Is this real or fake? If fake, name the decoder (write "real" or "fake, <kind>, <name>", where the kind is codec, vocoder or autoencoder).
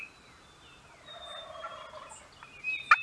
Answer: real